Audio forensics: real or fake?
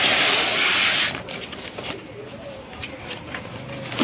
real